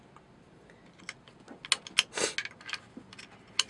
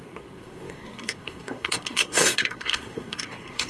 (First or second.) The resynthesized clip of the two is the second